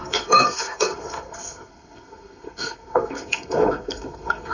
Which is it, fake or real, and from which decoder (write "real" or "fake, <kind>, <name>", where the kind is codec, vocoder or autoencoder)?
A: fake, codec, SNAC